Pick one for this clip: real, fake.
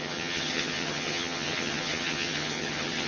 fake